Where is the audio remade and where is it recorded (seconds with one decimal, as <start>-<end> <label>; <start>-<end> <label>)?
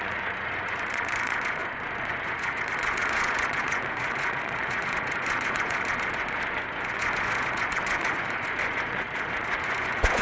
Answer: 0.0-10.2 remade